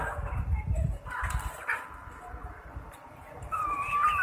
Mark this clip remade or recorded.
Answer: remade